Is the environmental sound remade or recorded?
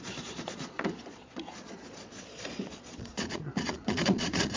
remade